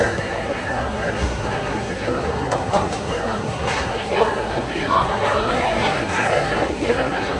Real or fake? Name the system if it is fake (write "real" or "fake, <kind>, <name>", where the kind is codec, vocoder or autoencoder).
fake, codec, SNAC